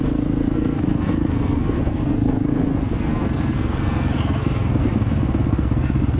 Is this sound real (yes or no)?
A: no